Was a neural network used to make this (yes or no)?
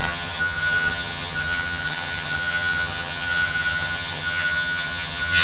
yes